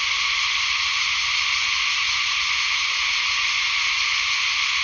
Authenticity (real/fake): real